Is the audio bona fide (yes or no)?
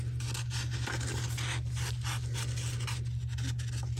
yes